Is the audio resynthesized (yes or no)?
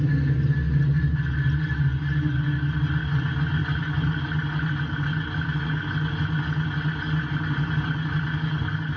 no